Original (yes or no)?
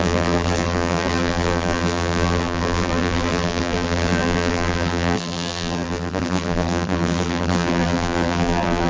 no